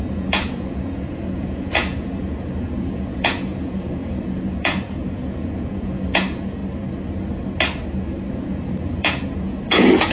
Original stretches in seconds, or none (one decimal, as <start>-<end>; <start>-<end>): 6.6-8.3